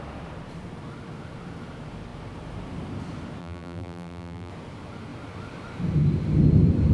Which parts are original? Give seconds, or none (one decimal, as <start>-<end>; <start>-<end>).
0.0-3.4; 4.5-6.9